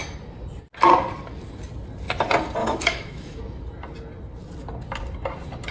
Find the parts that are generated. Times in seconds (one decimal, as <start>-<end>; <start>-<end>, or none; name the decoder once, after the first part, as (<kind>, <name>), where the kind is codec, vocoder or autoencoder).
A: 2.6-3.4 (autoencoder, DAC-VAE)